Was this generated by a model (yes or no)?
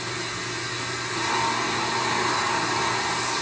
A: no